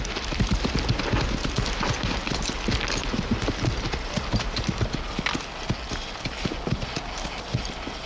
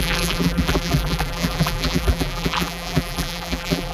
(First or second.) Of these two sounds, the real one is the first